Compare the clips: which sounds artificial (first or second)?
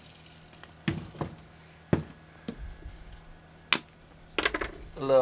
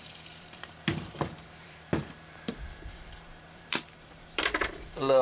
second